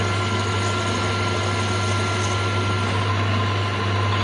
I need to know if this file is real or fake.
real